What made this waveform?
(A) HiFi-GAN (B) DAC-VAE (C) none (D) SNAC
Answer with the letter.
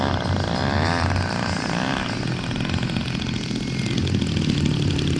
C